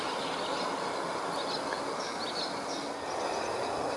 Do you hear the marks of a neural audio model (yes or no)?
no